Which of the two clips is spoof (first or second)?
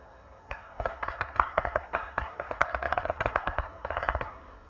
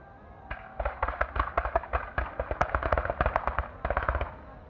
first